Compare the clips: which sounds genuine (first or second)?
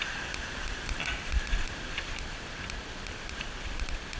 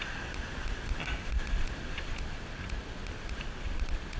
second